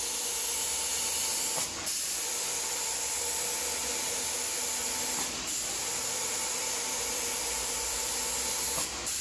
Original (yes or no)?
yes